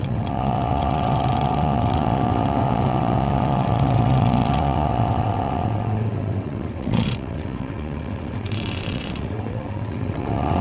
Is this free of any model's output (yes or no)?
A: no